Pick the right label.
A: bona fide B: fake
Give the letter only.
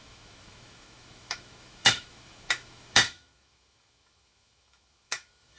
B